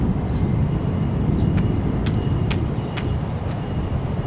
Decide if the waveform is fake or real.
fake